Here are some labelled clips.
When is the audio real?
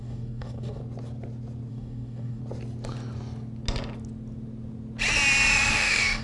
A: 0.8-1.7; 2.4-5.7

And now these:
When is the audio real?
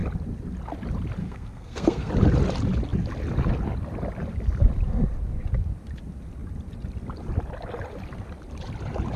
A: 0.0-1.2; 2.1-9.2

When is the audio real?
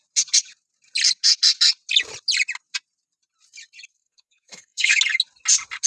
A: 0.0-3.9; 5.0-5.9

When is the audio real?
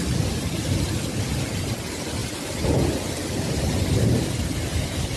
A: 0.0-5.2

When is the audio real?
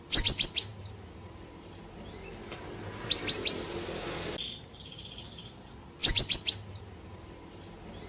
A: 0.0-8.1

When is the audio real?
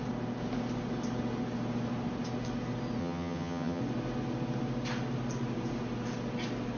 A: 0.0-3.0; 3.8-6.8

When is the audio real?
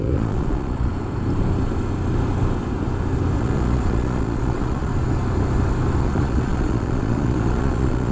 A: 0.9-3.4; 4.9-6.0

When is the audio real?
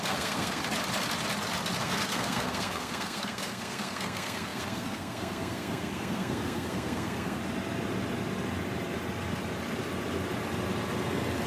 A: 0.6-1.8; 7.4-11.5